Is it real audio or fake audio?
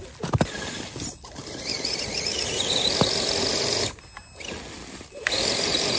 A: real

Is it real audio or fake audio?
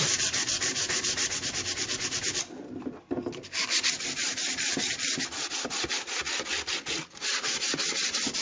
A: real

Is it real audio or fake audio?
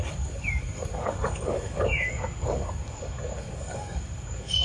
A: fake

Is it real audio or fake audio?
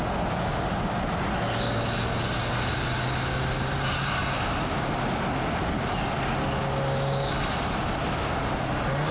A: real